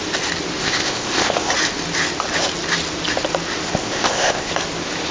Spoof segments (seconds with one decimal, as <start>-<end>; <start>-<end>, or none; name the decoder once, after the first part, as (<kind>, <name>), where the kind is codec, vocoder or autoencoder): 0.6-1.5 (codec, ZipCodec); 3.8-4.5